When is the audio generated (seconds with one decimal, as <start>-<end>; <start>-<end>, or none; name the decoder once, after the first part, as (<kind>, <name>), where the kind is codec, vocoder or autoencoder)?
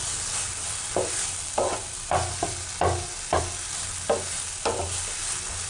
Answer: none